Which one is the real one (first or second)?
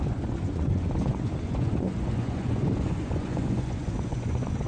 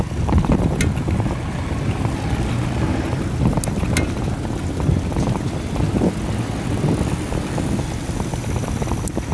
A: second